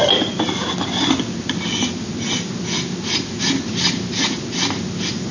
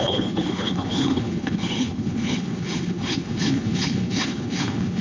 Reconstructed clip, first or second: second